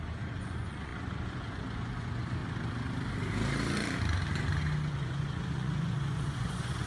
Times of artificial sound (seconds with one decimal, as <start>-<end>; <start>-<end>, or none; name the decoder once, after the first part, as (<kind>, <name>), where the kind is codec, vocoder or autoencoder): 0.0-2.4 (vocoder, Vocos); 4.9-6.9